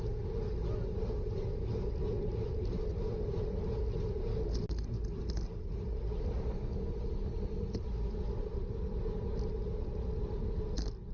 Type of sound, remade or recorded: recorded